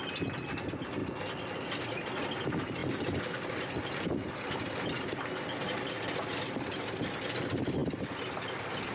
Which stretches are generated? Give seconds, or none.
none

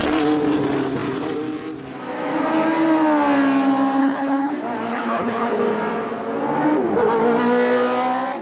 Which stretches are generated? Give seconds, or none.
4.0-4.5 (codec, HILCodec); 4.9-5.6

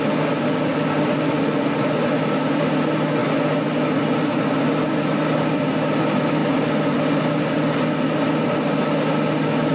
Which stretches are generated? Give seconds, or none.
none

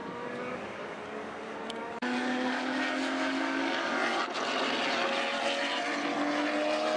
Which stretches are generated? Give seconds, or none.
0.0-4.2 (codec, DAC)

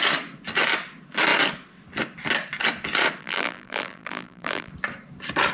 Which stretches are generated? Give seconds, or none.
3.2-4.7 (vocoder, BigVGAN v2)